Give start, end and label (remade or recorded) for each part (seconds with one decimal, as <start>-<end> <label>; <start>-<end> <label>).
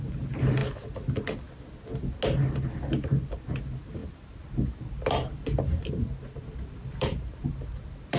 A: 0.0-0.6 remade; 0.6-3.5 recorded; 3.5-8.2 remade